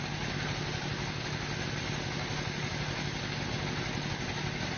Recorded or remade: recorded